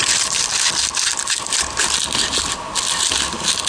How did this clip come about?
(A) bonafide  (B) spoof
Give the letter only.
A